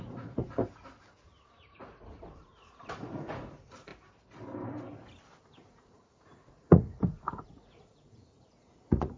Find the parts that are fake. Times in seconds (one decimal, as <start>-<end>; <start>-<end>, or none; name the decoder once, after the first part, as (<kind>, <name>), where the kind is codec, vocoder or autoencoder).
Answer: 0.0-0.6 (vocoder, Vocos); 1.1-3.9; 5.4-9.2